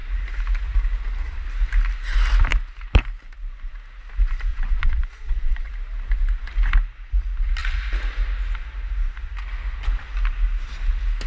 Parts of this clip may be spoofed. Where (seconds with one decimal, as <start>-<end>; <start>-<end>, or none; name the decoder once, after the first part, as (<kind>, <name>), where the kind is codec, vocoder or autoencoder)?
4.5-5.7 (vocoder, Vocos)